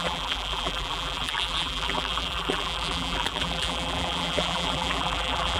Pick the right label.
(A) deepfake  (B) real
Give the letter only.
A